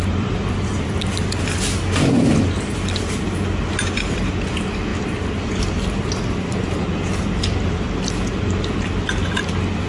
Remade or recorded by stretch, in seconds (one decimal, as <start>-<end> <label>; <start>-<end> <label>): 0.0-1.0 remade; 1.0-9.9 recorded